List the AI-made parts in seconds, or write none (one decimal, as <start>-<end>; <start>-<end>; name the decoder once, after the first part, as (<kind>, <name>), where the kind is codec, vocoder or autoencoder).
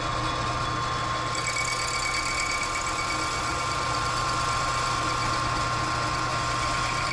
3.5-4.7 (vocoder, BigVGAN v2); 6.3-7.1